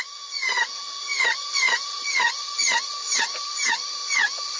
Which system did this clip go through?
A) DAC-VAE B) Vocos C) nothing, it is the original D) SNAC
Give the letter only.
B